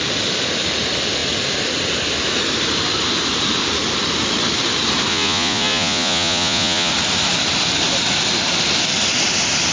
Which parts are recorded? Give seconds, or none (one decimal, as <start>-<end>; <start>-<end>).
0.0-5.1; 6.9-9.7